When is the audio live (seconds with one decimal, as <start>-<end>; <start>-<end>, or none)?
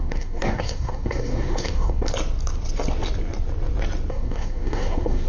2.1-4.1